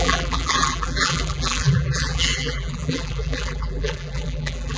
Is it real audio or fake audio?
fake